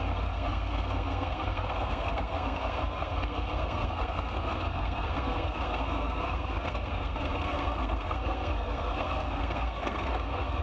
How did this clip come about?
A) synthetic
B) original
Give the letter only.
A